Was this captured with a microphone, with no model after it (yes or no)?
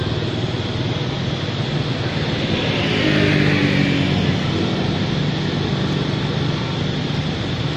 yes